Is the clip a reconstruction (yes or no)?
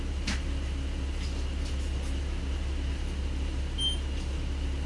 no